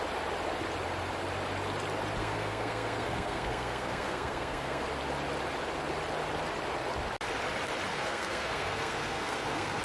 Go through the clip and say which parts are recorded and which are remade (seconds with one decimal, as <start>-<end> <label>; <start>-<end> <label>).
0.0-2.2 recorded; 2.2-4.8 remade; 4.8-7.9 recorded; 7.9-9.8 remade